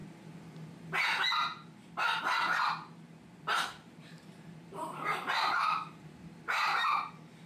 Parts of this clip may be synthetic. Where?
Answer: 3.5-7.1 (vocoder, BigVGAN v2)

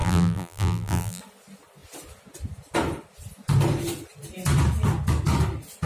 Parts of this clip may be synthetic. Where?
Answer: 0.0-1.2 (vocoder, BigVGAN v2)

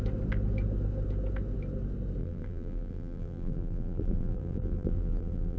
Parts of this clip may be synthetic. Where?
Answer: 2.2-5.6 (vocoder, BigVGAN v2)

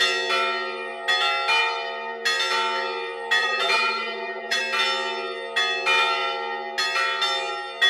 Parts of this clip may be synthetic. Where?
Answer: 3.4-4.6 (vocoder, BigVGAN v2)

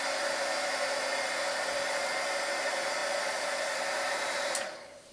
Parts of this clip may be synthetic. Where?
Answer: 3.0-3.8 (vocoder, BigVGAN v2)

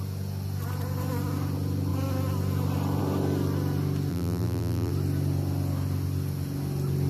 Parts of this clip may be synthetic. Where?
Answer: 4.1-4.9 (vocoder, BigVGAN v2)

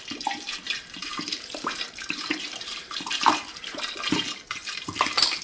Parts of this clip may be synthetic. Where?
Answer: 1.0-3.8 (vocoder, BigVGAN v2); 4.6-5.4

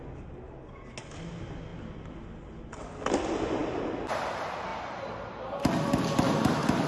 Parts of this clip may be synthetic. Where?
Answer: none